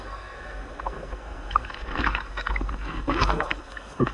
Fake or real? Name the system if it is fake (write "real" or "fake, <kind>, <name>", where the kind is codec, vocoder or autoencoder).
fake, codec, SNAC